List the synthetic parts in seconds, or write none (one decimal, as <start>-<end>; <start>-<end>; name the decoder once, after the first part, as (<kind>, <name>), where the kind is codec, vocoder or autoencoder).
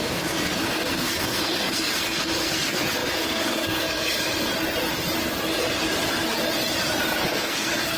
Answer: 0.0-4.5 (codec, SNAC); 7.2-8.0